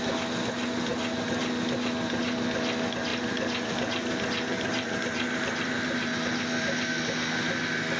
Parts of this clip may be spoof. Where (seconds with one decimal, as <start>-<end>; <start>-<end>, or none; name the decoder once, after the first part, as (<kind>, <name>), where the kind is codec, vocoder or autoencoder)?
3.1-6.1 (vocoder, BigVGAN v2)